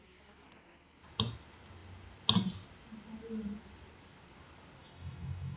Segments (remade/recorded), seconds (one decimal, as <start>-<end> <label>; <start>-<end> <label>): 0.0-4.8 recorded; 4.8-5.6 remade